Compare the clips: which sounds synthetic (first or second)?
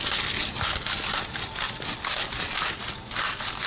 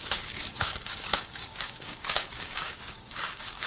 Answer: second